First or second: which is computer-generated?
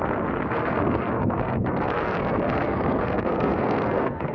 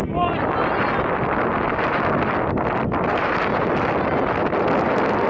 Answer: first